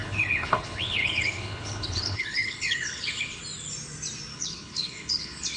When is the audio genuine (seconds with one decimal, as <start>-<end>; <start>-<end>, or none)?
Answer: 3.4-4.3